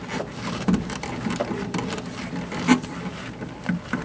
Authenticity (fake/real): real